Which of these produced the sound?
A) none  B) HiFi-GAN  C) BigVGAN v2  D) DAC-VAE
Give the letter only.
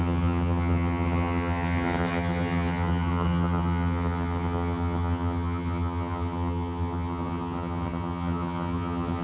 B